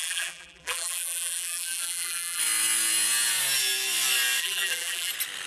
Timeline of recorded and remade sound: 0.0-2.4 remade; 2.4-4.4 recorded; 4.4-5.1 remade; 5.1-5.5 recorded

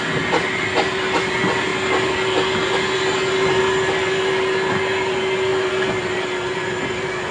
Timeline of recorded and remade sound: 0.0-1.7 recorded; 1.7-3.6 remade; 3.6-7.3 recorded

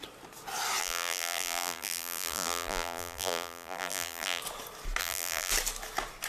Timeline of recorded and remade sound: 0.0-0.8 recorded; 0.8-4.4 remade; 4.4-5.0 recorded; 5.0-5.5 remade; 5.5-6.3 recorded

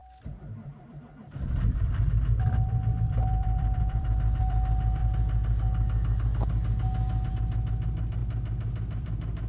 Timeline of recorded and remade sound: 0.0-5.0 remade; 5.0-7.3 recorded; 7.3-9.5 remade

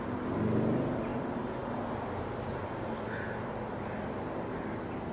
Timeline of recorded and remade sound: 0.0-1.1 recorded; 1.1-4.2 remade; 4.2-5.1 recorded